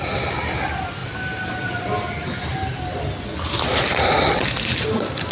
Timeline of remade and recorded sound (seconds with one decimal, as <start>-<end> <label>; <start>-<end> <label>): 0.0-5.3 recorded